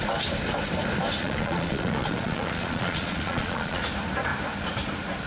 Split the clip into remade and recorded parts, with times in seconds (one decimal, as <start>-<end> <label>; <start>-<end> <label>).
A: 0.0-1.2 recorded; 1.2-3.8 remade; 3.8-5.3 recorded